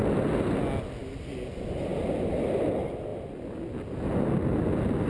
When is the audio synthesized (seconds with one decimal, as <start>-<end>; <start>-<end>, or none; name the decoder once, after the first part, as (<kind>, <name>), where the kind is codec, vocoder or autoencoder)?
0.0-0.6 (vocoder, BigVGAN v2); 1.9-2.7